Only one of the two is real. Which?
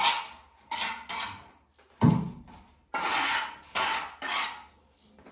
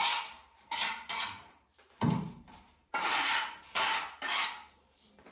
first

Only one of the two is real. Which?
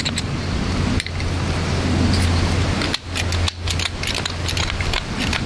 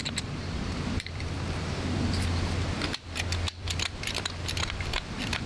first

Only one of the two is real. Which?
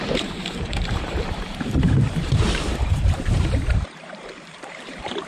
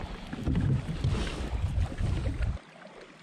second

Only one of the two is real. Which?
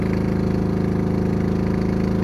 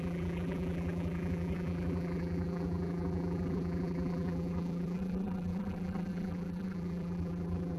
first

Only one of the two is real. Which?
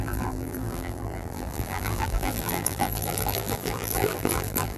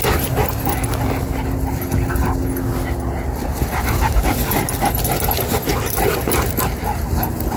second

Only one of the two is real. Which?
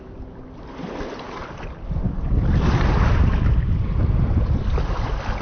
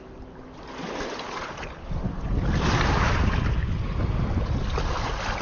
second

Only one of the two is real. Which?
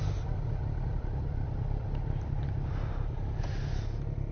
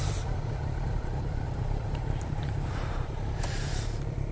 first